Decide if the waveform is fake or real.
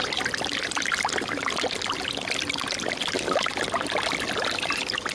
fake